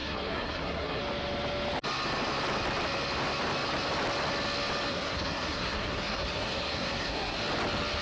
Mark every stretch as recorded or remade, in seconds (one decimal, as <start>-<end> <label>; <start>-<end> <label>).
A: 0.0-1.0 remade; 1.0-4.9 recorded; 4.9-7.4 remade; 7.4-8.0 recorded